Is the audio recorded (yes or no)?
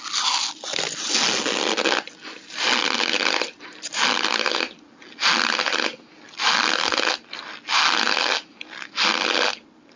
yes